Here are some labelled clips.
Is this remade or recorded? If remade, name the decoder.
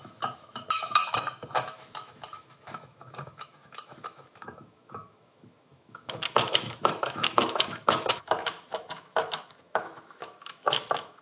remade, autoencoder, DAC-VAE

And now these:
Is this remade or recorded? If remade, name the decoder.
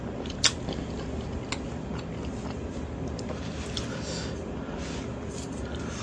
recorded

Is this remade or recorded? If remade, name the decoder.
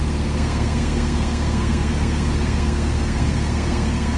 remade, codec, SNAC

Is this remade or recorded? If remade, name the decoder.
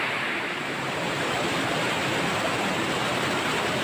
remade, vocoder, BigVGAN v2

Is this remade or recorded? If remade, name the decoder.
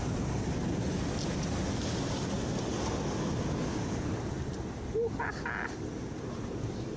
recorded